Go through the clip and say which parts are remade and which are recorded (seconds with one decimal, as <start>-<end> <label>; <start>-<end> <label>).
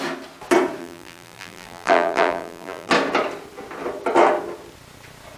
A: 0.0-0.8 recorded; 0.8-2.9 remade; 2.9-5.4 recorded